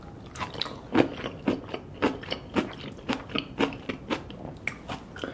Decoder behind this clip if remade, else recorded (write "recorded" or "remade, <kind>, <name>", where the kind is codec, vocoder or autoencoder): recorded